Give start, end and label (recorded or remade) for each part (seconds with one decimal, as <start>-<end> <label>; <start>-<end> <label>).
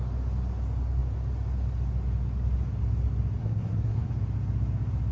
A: 0.0-3.4 recorded; 3.4-4.1 remade; 4.1-5.1 recorded